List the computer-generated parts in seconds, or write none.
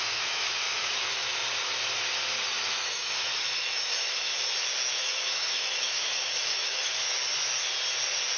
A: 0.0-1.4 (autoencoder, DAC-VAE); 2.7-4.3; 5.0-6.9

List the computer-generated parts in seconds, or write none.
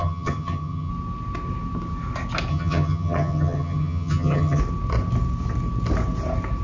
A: 0.0-0.9 (vocoder, HiFi-GAN); 2.5-4.6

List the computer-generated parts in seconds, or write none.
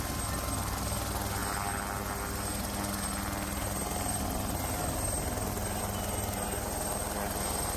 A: none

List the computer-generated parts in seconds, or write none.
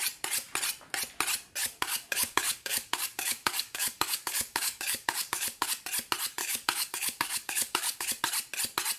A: 1.6-5.7 (codec, DAC); 6.4-8.1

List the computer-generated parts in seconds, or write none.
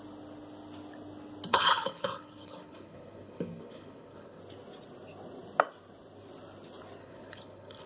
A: 1.5-4.4 (codec, HILCodec); 7.0-7.9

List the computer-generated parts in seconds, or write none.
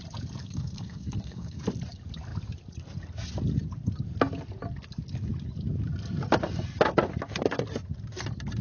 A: 0.4-1.6 (codec, SNAC)